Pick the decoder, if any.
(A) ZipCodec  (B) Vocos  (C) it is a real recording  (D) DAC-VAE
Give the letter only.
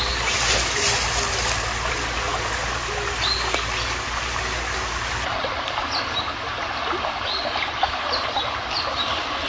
C